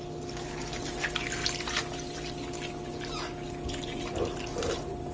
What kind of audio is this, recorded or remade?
recorded